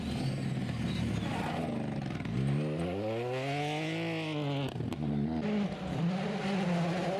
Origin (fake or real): real